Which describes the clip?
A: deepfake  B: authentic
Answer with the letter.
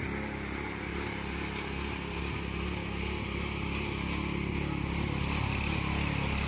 B